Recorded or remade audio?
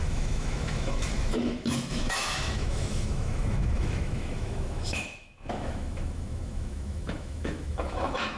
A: remade